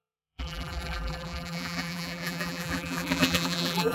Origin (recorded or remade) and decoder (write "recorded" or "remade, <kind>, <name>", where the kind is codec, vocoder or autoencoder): remade, vocoder, BigVGAN v2